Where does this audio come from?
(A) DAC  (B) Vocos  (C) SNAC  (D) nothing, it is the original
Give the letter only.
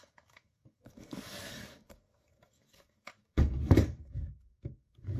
A